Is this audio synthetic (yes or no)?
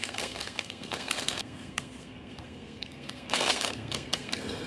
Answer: yes